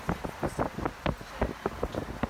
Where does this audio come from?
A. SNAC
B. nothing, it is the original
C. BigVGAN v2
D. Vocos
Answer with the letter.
B